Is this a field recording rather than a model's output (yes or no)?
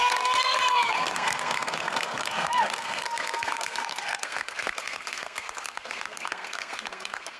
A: no